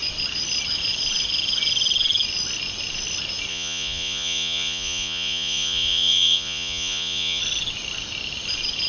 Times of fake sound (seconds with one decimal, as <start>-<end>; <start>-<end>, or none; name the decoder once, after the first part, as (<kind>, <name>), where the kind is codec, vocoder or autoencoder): 3.5-7.4 (vocoder, Vocos)